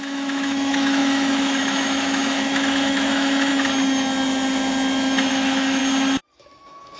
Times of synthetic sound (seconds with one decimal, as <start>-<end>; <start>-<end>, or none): 0.0-3.5; 5.3-5.8; 6.4-7.0